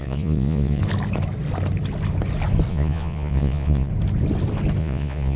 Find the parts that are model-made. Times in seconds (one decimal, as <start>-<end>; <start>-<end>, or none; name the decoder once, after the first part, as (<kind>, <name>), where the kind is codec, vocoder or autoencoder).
0.0-0.8 (vocoder, Vocos); 2.7-3.9; 4.8-5.4